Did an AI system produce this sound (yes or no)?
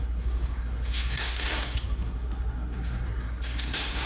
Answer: yes